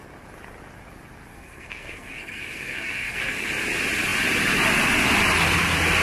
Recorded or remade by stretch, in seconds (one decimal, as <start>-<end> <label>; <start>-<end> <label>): 0.0-1.3 recorded; 1.3-3.5 remade; 3.5-6.0 recorded